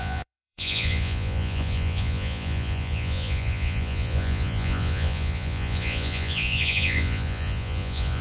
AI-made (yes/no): yes